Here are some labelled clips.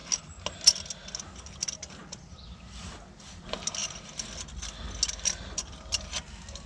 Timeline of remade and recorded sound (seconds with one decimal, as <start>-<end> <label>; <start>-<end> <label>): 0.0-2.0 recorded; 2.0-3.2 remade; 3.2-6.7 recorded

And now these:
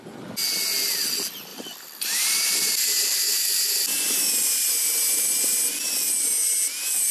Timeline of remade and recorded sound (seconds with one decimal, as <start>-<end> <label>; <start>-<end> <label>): 0.0-1.5 recorded; 1.5-5.8 remade; 5.8-7.1 recorded

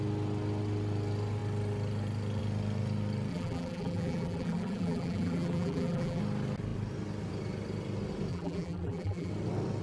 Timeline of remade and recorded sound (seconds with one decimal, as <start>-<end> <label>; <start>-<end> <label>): 0.0-3.3 recorded; 3.3-6.2 remade; 6.2-8.3 recorded; 8.3-9.3 remade; 9.3-9.8 recorded

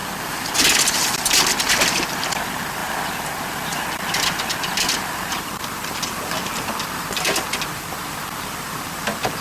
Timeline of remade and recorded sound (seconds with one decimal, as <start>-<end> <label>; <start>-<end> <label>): 0.0-2.1 recorded; 2.1-9.4 remade

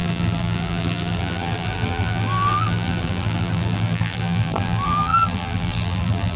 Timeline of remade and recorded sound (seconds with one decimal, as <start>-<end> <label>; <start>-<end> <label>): 0.0-6.4 remade

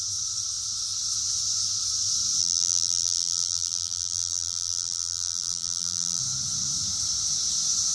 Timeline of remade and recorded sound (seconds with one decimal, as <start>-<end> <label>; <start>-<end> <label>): 0.0-2.4 recorded; 2.4-6.2 remade; 6.2-7.9 recorded